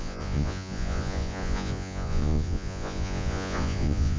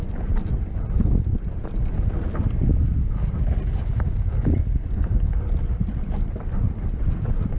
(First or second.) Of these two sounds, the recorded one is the second